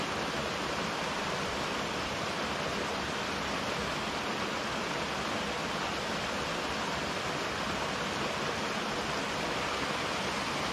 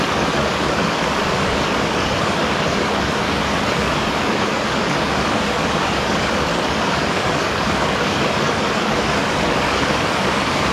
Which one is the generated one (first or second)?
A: second